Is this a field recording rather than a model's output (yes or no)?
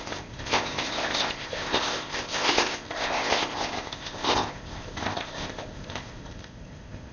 no